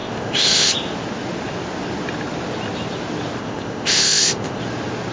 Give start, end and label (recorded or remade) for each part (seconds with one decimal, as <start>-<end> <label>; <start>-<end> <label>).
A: 0.0-0.7 remade; 0.7-3.4 recorded; 3.4-4.6 remade; 4.6-5.1 recorded